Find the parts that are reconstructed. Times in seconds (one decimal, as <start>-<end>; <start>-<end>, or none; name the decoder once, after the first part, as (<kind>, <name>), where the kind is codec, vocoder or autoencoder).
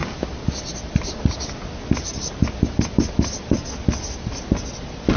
none